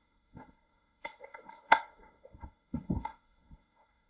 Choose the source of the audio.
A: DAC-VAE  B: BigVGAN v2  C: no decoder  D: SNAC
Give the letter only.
D